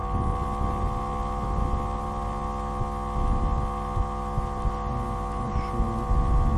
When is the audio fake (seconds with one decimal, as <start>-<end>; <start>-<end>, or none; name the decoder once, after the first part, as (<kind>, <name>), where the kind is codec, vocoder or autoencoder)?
none